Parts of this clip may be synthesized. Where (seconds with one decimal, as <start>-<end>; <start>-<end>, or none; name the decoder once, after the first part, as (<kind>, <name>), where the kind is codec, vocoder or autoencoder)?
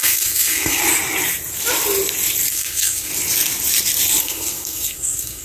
0.0-0.8 (codec, SNAC); 2.5-3.1; 4.2-5.4